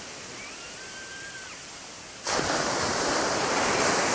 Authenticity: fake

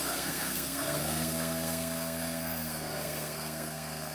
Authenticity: fake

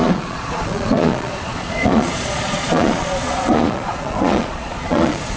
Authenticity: fake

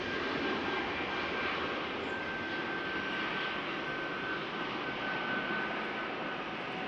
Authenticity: real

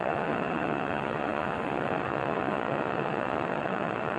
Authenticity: fake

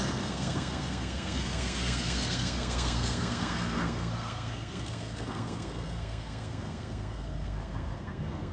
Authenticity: fake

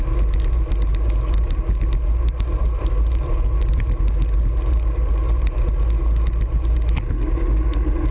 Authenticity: real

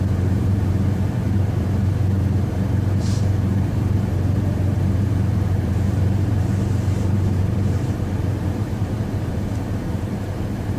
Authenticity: fake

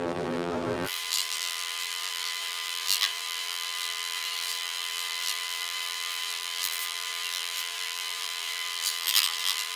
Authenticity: fake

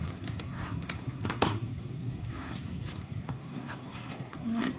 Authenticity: fake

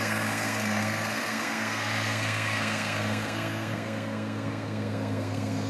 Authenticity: fake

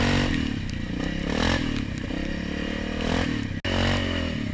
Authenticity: real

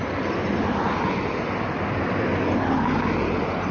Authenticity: real